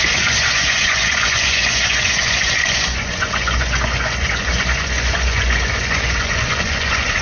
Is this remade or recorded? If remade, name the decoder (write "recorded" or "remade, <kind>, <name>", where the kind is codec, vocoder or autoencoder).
remade, vocoder, Vocos